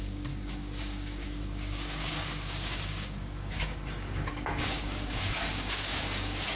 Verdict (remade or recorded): remade